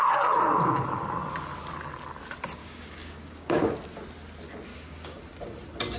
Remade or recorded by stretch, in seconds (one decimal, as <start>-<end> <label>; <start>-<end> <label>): 0.0-2.6 recorded; 2.6-3.7 remade; 3.7-4.7 recorded; 4.7-5.2 remade; 5.2-6.0 recorded